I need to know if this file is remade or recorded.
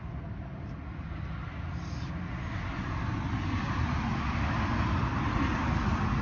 recorded